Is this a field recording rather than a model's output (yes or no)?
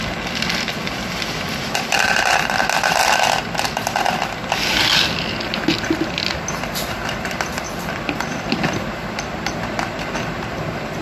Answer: yes